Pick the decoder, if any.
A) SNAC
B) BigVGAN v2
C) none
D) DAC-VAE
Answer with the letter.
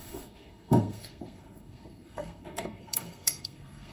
A